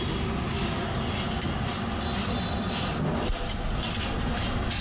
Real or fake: real